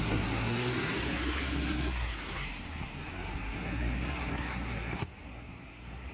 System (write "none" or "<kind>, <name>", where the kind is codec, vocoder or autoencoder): codec, SNAC